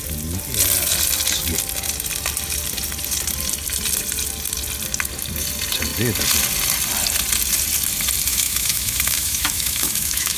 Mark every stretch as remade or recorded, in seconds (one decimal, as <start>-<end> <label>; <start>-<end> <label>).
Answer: 0.0-8.3 recorded; 8.3-10.4 remade